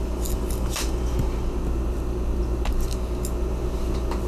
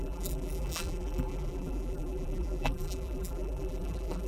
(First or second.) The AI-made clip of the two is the second